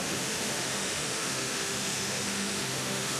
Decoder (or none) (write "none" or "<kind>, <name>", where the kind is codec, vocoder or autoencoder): autoencoder, DAC-VAE